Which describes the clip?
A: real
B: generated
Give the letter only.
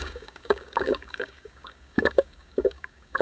B